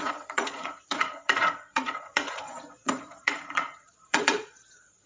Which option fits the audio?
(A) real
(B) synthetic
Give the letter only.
B